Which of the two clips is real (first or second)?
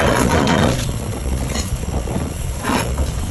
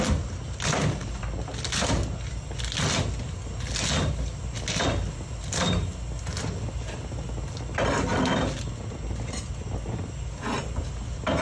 second